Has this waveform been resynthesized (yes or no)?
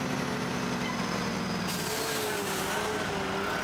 no